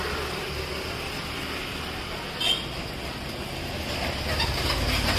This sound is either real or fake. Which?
real